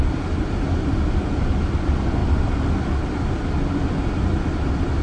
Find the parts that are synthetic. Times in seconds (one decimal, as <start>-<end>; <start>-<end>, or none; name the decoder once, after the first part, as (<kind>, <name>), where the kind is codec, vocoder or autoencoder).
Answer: none